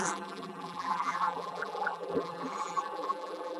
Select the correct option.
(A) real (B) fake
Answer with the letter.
B